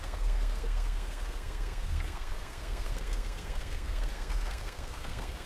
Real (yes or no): no